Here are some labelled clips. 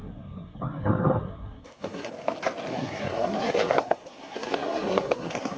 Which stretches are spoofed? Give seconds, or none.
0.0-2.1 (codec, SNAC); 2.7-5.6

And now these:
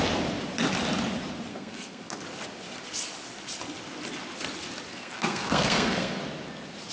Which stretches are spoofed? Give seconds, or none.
1.5-2.2 (codec, SNAC); 4.9-6.2

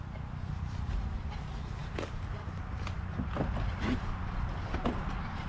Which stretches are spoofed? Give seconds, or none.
none

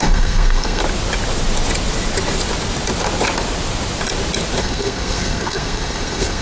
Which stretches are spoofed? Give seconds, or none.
0.0-0.8 (codec, SNAC); 4.6-6.4